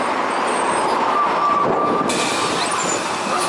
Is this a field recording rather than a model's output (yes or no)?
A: yes